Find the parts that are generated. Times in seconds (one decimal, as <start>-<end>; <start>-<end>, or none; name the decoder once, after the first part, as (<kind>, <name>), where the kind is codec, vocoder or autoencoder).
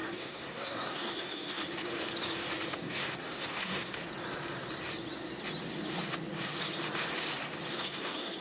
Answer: 0.0-1.6 (codec, SNAC); 2.7-4.0; 7.7-8.4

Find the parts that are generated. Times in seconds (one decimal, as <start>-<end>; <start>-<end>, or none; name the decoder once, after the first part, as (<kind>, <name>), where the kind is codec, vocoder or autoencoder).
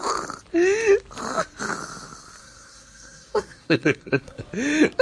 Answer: 2.4-4.4 (codec, SNAC)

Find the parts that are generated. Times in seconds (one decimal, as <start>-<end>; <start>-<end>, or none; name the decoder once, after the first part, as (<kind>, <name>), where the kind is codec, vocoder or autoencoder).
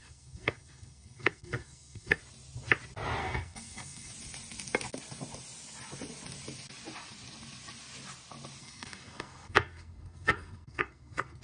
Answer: 0.0-2.2 (codec, SNAC); 3.2-4.1; 8.6-11.4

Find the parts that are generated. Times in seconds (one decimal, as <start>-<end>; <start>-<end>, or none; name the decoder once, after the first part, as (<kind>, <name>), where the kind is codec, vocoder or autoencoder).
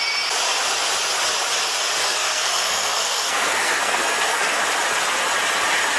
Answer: 2.0-4.6 (codec, SNAC)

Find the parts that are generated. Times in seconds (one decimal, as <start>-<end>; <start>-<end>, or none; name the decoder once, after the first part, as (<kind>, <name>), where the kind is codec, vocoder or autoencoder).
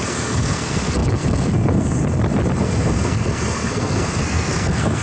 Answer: 0.0-2.0 (codec, SNAC); 2.6-5.0